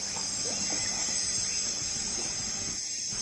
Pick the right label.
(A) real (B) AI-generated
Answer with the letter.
A